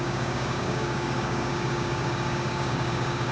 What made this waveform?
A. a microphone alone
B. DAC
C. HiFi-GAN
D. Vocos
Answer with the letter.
B